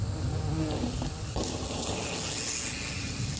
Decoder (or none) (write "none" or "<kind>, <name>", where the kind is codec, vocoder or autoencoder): none